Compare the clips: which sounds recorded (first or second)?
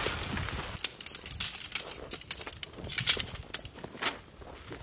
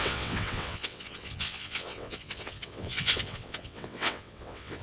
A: first